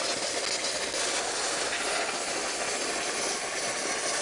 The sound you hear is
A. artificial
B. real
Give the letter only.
B